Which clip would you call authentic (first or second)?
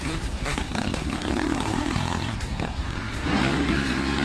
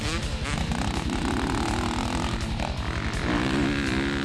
second